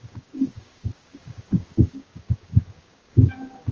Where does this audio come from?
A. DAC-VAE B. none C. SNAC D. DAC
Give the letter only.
D